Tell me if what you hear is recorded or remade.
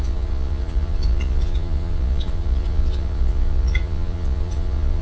remade